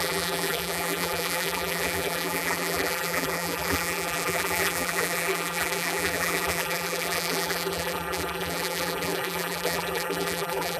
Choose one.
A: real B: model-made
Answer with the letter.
B